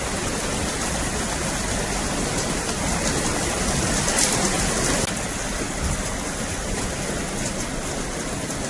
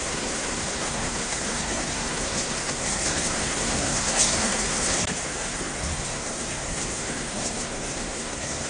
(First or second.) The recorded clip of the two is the first